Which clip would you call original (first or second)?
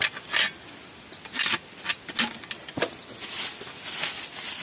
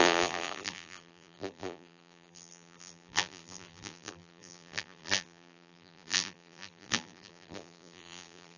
first